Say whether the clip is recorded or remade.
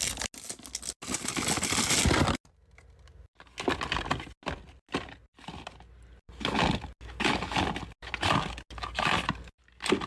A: recorded